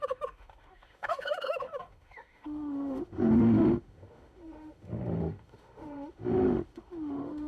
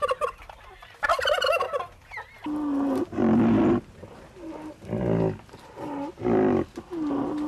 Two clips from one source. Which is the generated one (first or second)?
first